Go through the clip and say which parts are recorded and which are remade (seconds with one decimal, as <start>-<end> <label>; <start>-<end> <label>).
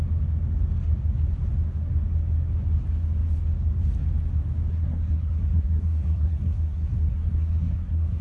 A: 0.0-4.7 recorded; 4.7-8.2 remade